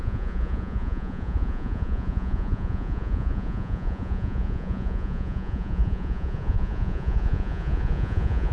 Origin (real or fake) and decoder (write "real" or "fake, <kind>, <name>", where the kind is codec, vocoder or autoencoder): fake, vocoder, Vocos